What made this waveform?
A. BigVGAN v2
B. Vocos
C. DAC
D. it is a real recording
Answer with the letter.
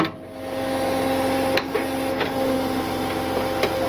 D